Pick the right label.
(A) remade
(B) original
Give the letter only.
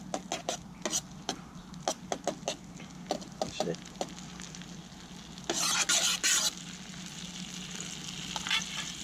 B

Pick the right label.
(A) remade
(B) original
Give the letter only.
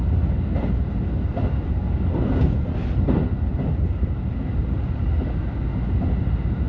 B